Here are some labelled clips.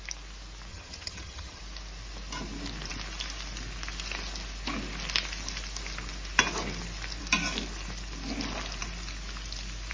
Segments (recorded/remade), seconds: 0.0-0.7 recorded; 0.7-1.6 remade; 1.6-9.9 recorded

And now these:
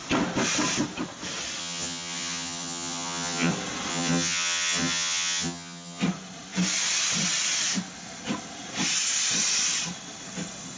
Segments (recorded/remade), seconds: 0.0-1.6 recorded; 1.6-3.5 remade; 3.5-3.9 recorded; 3.9-6.0 remade; 6.0-10.8 recorded

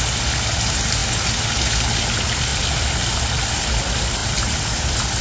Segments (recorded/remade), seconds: 0.0-5.2 recorded

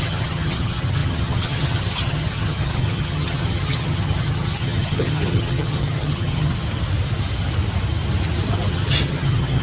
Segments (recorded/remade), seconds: 0.0-6.5 remade; 6.5-8.7 recorded; 8.7-9.6 remade

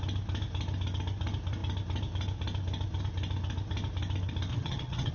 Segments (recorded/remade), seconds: 0.0-4.5 recorded; 4.5-5.1 remade